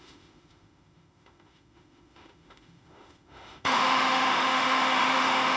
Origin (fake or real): fake